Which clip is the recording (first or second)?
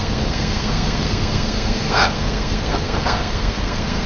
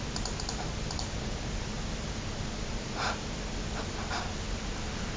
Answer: second